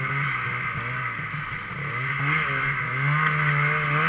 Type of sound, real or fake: real